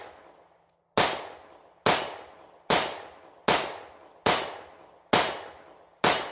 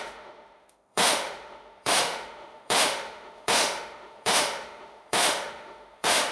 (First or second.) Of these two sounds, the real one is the first